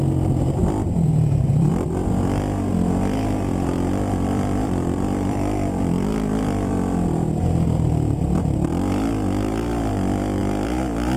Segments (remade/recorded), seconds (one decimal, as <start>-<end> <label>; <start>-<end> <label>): 0.0-0.6 recorded; 0.6-1.7 remade; 1.7-3.5 recorded; 3.5-6.7 remade; 6.7-11.2 recorded